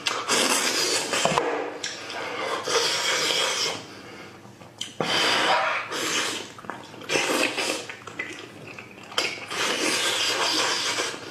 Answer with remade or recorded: recorded